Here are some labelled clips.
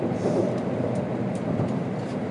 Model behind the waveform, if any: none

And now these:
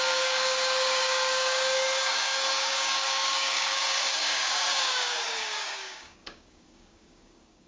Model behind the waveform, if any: codec, DAC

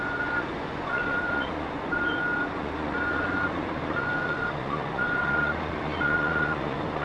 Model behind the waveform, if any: vocoder, Vocos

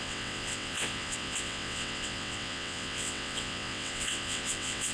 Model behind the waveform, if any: vocoder, WaveNeXt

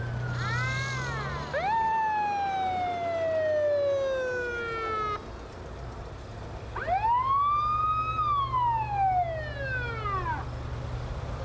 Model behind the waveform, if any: none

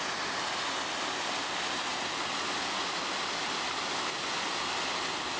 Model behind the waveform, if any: none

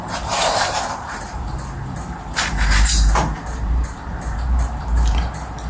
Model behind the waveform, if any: vocoder, BigVGAN v2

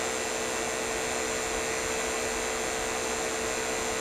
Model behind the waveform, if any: none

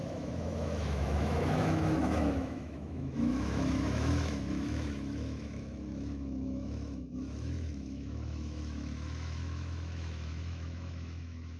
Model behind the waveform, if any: autoencoder, DAC-VAE